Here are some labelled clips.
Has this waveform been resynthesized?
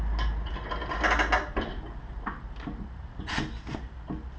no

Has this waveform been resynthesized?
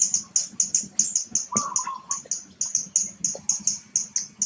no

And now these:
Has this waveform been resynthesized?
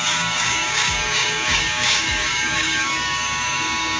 yes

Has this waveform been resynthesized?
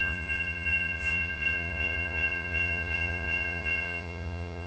yes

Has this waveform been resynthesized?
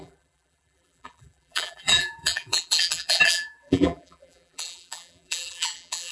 yes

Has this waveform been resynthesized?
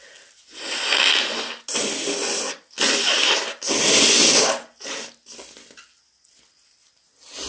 no